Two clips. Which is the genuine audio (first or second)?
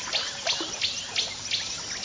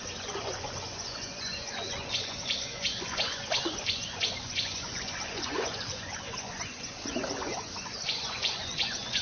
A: first